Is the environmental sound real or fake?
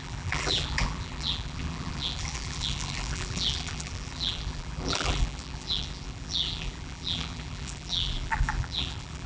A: fake